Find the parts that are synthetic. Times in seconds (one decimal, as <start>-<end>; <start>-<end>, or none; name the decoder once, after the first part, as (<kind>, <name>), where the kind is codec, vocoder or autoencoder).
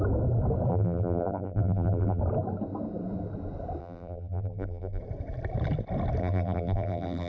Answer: 0.7-2.2 (vocoder, BigVGAN v2); 3.8-5.0; 6.2-7.3